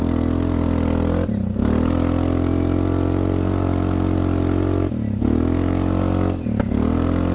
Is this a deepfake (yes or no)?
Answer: no